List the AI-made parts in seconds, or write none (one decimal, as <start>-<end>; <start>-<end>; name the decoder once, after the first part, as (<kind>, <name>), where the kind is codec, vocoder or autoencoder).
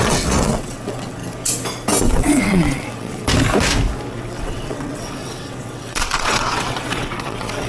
0.0-1.2 (vocoder, WaveNeXt); 2.0-3.3; 4.1-7.7